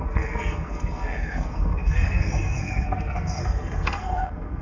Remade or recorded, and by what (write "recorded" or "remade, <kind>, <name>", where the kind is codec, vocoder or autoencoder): remade, codec, SNAC